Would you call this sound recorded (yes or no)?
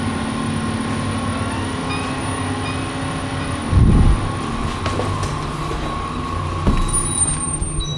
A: yes